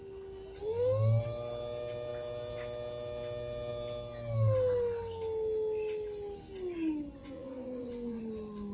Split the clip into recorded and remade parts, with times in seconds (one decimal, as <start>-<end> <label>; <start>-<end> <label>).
0.0-7.2 recorded; 7.2-8.2 remade; 8.2-8.7 recorded